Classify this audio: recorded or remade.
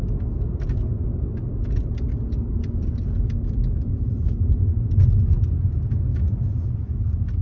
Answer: recorded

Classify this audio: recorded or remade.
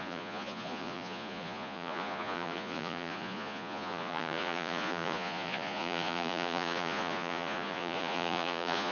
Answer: remade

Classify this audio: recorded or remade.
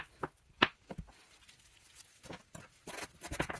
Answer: recorded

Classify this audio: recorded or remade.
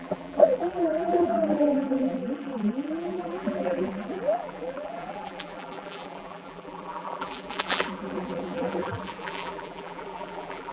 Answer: remade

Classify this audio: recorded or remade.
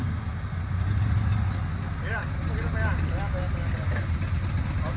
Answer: recorded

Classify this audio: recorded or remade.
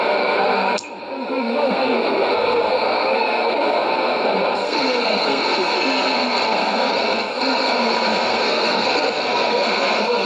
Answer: remade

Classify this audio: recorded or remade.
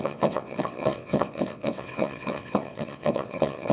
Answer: remade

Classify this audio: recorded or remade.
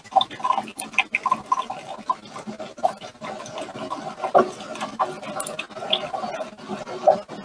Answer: recorded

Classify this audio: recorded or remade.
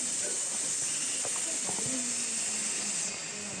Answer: recorded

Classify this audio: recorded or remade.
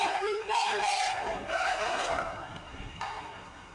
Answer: remade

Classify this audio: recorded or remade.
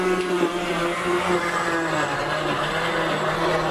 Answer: recorded